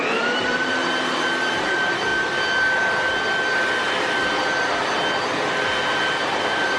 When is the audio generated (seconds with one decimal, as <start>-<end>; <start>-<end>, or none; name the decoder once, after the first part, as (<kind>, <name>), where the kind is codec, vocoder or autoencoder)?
0.0-0.8 (vocoder, BigVGAN v2); 1.5-2.1; 6.2-6.8